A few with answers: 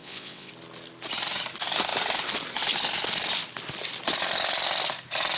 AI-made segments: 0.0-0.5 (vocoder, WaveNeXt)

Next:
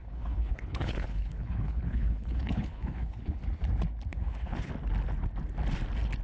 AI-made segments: 0.0-3.4 (codec, HILCodec); 4.1-4.7

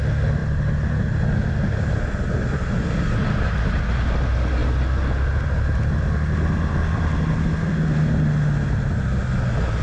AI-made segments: none

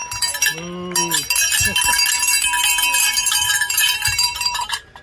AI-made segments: 3.0-5.0 (vocoder, BigVGAN v2)

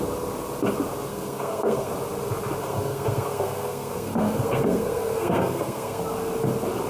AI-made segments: 1.1-1.9 (codec, SNAC); 2.6-6.0